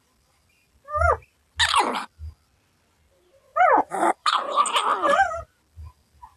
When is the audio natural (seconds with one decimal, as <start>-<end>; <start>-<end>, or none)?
0.0-3.5; 4.3-4.9; 5.6-6.4